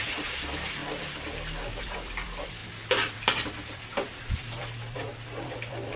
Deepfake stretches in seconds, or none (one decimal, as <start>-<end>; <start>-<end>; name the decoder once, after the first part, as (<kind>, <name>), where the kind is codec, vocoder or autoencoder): 0.0-0.8 (vocoder, BigVGAN v2); 1.8-2.6; 3.1-6.0